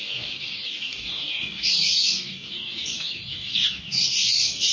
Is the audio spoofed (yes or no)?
yes